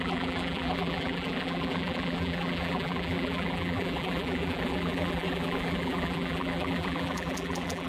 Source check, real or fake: fake